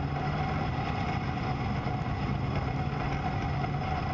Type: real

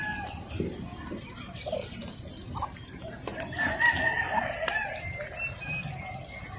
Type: real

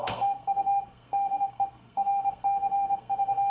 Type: fake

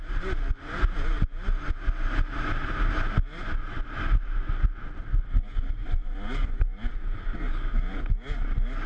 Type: real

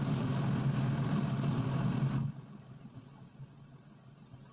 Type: real